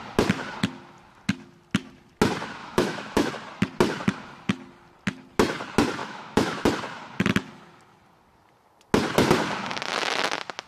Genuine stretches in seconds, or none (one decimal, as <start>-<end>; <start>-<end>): 0.0-2.6; 3.3-6.0; 6.7-10.7